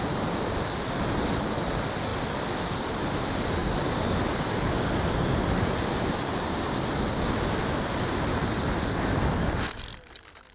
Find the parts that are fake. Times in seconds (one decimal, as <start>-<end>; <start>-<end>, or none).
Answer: none

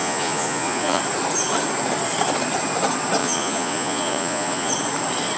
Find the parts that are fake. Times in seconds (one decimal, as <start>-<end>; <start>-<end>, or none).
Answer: 0.0-1.0; 3.2-4.7

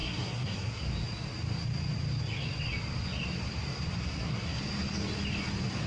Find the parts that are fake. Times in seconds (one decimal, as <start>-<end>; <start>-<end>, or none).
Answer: 0.0-0.8; 4.0-4.6

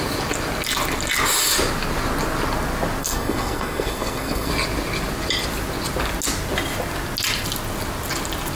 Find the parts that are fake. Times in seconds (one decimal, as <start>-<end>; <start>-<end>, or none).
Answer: 3.0-4.5

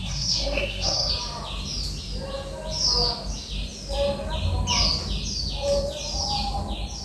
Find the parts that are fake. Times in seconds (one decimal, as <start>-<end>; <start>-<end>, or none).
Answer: 0.0-1.1

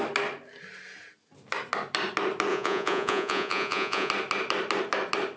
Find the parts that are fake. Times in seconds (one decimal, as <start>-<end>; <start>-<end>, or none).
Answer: 2.5-4.1

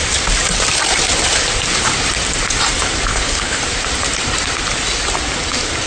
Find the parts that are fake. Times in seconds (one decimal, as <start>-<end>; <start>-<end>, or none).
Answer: 3.1-3.6

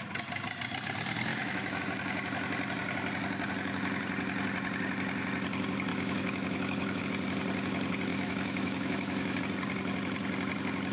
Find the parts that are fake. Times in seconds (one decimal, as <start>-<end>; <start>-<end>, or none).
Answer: 1.3-1.8; 5.9-7.0; 8.1-9.4